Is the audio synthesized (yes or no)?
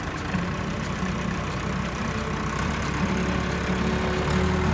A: yes